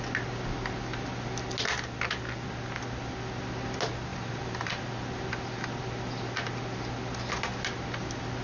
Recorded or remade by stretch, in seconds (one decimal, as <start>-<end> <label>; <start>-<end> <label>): 0.0-4.1 recorded; 4.1-4.8 remade; 4.8-8.4 recorded